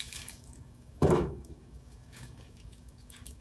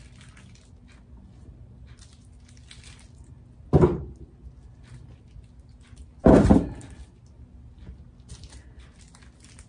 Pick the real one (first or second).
second